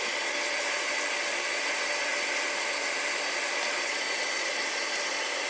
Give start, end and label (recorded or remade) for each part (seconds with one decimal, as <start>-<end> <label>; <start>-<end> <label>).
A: 0.0-5.5 recorded